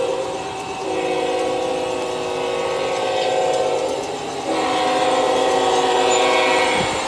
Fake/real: real